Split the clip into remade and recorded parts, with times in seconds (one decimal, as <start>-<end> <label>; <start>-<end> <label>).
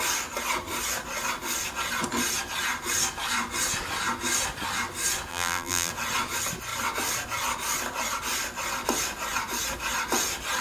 0.0-5.3 recorded; 5.3-5.9 remade; 5.9-10.6 recorded